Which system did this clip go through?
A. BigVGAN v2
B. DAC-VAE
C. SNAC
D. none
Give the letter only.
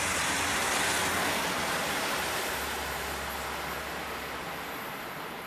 D